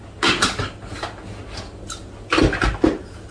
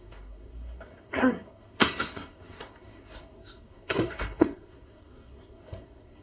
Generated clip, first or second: second